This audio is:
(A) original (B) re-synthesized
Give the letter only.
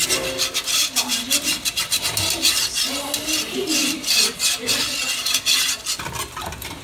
A